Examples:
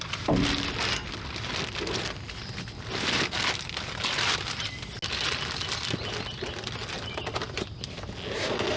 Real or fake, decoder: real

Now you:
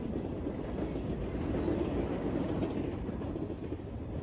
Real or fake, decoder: real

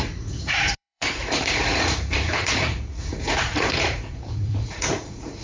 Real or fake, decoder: fake, vocoder, Vocos